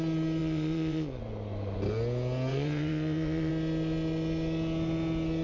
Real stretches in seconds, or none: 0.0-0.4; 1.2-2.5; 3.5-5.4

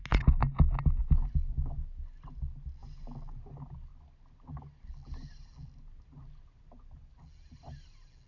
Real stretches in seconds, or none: 0.0-8.3